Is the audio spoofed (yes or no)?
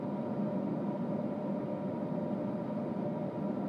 no